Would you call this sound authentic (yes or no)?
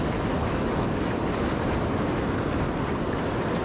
yes